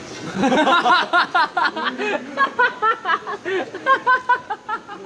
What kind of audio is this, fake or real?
real